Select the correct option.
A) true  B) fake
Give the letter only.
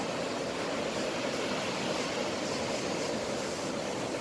A